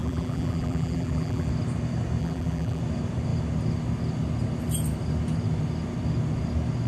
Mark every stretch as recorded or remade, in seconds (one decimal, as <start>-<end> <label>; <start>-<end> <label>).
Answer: 0.0-1.5 remade; 1.5-2.2 recorded; 2.2-2.8 remade; 2.8-6.9 recorded